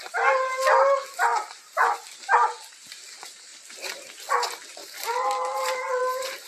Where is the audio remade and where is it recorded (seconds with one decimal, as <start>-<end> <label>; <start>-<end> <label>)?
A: 0.0-3.5 recorded; 3.5-4.0 remade; 4.0-4.8 recorded; 4.8-6.0 remade; 6.0-6.5 recorded